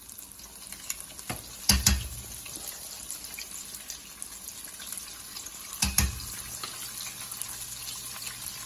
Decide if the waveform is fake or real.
real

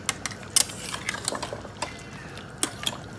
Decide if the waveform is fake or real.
real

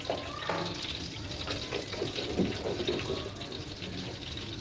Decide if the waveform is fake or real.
real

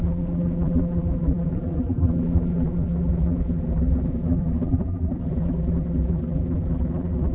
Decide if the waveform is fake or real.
fake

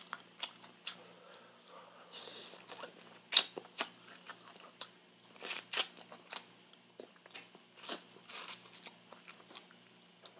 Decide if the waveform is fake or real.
real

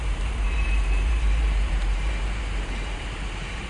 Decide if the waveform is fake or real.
fake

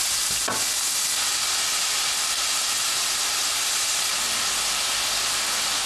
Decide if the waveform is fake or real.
real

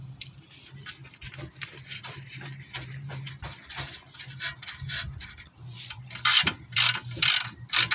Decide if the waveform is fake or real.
fake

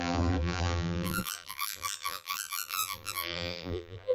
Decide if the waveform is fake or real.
fake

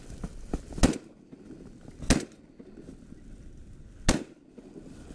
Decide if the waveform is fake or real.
real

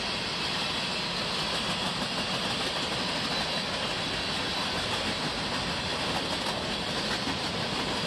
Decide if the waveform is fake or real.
real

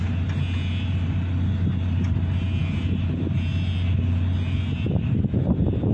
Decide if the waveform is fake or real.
real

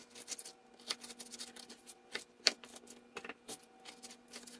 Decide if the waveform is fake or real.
real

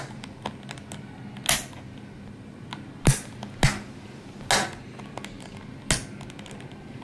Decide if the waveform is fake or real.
real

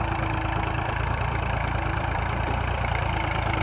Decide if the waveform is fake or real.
fake